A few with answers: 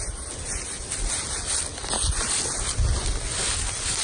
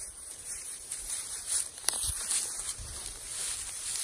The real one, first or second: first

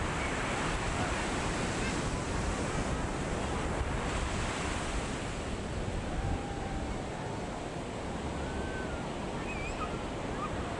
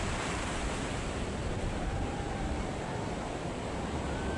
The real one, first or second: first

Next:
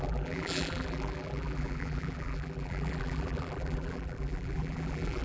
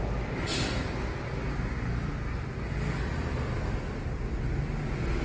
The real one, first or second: second